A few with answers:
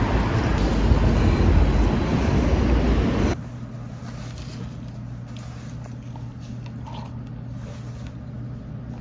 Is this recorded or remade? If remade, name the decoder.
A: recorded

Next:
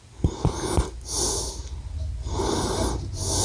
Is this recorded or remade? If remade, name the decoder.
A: recorded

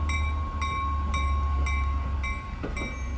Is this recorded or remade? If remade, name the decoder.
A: recorded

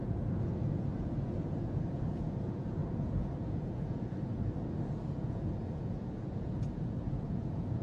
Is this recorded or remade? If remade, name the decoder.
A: remade, vocoder, Vocos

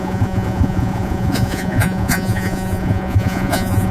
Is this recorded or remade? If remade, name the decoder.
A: remade, vocoder, Vocos